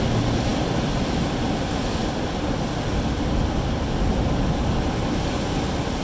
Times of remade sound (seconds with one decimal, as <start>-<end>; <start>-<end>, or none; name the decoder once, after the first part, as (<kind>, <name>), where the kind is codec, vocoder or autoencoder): 0.5-1.5 (vocoder, BigVGAN v2); 2.0-5.0